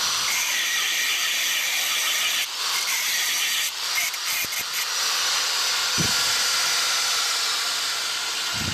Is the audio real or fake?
real